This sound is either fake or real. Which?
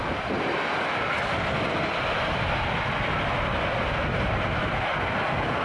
real